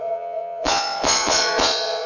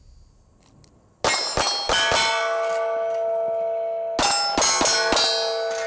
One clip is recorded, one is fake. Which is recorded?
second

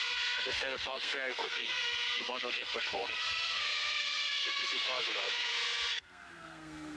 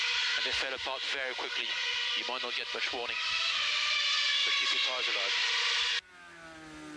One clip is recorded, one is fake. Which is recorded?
second